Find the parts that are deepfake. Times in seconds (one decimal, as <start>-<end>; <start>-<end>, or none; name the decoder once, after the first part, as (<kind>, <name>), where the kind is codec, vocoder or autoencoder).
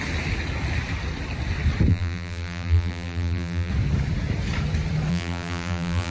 1.9-3.7 (vocoder, BigVGAN v2); 5.1-6.1